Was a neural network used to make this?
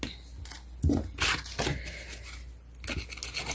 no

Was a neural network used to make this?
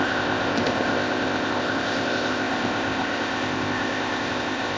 yes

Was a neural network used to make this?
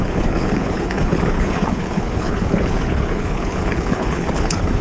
yes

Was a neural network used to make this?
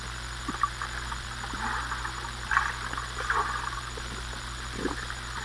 no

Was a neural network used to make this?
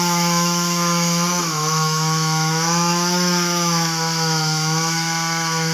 yes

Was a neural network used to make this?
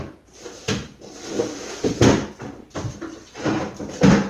no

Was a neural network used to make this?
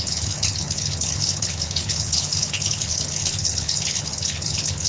yes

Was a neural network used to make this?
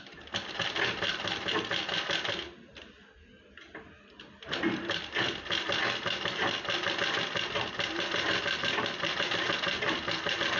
no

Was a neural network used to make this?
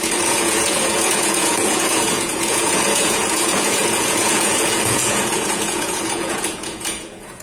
yes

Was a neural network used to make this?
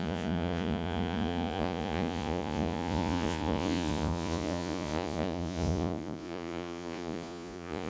yes